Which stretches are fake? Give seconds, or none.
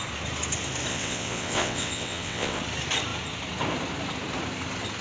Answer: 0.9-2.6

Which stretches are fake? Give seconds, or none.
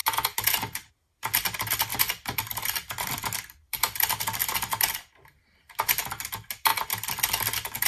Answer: 0.0-0.9; 1.9-5.4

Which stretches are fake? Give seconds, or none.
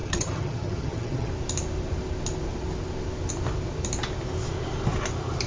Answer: 0.0-1.3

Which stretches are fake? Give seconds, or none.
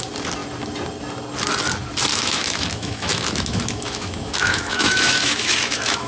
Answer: 2.1-6.1